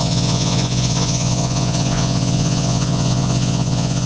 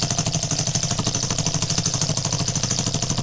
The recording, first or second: second